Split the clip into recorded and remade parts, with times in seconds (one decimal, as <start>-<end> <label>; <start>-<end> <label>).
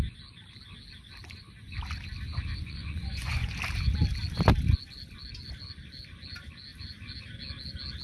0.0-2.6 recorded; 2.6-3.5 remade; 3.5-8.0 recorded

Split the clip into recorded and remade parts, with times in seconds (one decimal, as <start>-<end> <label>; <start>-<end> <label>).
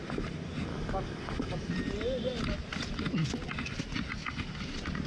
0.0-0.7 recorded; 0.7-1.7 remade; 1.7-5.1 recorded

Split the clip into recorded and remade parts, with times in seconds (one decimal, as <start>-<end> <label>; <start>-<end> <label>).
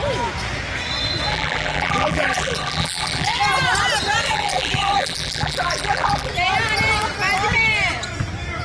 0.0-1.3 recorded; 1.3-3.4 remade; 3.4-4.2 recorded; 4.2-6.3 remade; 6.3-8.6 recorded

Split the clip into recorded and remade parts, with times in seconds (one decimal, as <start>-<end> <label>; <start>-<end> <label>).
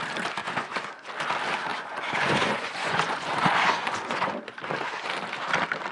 0.0-0.4 recorded; 0.4-0.9 remade; 0.9-1.7 recorded; 1.7-4.3 remade; 4.3-5.9 recorded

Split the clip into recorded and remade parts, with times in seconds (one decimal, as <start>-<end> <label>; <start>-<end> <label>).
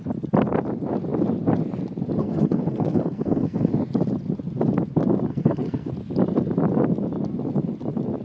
0.0-2.2 recorded; 2.2-3.7 remade; 3.7-5.3 recorded; 5.3-5.9 remade; 5.9-8.2 recorded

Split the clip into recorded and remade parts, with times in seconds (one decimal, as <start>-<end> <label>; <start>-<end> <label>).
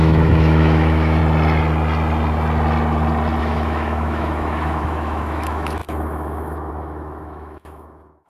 0.0-1.2 remade; 1.2-3.4 recorded; 3.4-8.3 remade